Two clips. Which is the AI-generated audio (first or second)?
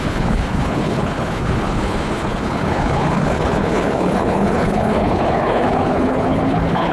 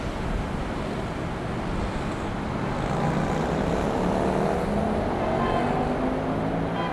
first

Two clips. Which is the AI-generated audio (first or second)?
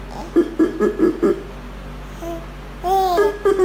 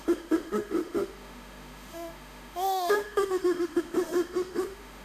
second